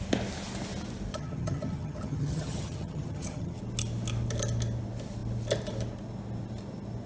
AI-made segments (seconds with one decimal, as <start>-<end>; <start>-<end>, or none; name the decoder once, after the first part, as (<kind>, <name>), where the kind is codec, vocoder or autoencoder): 1.1-3.6 (vocoder, HiFi-GAN)